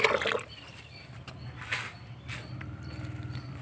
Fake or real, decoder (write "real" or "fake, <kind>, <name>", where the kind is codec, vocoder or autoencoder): real